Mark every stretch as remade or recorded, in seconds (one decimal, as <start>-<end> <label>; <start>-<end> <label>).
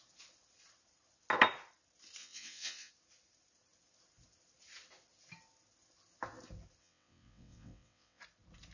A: 0.0-2.2 recorded; 2.2-2.9 remade; 2.9-6.8 recorded; 6.8-8.2 remade; 8.2-8.7 recorded